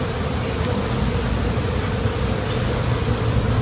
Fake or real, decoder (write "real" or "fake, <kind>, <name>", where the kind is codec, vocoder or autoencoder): real